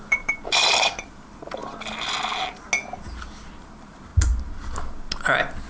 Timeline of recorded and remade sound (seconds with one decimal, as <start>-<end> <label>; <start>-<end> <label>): 0.0-1.6 remade; 1.6-3.6 recorded; 3.6-4.1 remade; 4.1-5.7 recorded